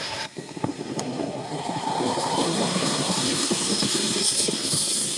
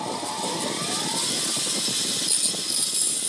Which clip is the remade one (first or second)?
first